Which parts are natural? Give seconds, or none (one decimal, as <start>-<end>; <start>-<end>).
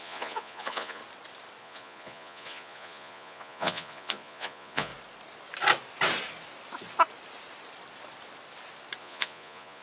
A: 1.0-1.6; 4.9-9.0